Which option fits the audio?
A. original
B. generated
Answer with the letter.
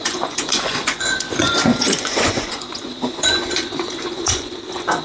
B